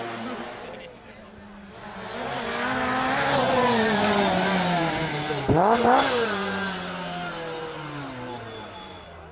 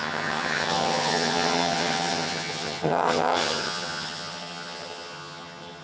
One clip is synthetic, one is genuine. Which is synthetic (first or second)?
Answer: second